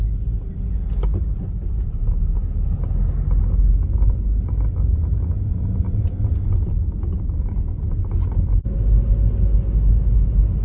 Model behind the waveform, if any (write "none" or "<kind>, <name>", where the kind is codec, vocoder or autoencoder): none